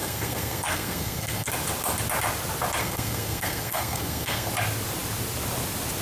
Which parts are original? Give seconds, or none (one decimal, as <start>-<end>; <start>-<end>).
1.5-2.8; 4.5-6.0